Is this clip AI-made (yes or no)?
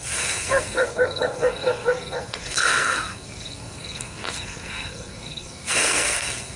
yes